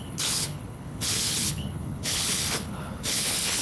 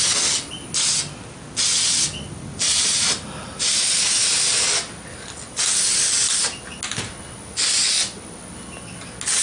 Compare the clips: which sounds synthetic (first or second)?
first